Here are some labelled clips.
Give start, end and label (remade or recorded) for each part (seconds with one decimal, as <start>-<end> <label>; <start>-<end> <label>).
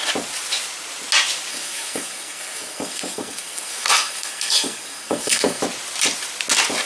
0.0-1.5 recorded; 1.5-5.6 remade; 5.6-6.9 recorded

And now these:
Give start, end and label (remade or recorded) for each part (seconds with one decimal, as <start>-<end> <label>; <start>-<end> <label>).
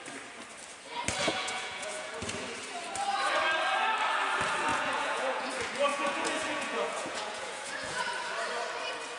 0.0-1.2 recorded; 1.2-2.1 remade; 2.1-4.7 recorded; 4.7-5.5 remade; 5.5-5.9 recorded; 5.9-8.0 remade; 8.0-9.2 recorded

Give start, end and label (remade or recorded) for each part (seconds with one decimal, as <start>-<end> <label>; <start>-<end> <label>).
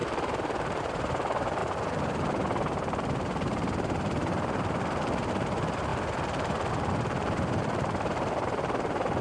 0.0-9.2 remade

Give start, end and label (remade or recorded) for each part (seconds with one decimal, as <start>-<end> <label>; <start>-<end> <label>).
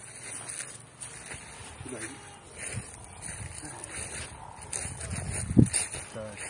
0.0-1.6 recorded; 1.6-4.4 remade; 4.4-6.5 recorded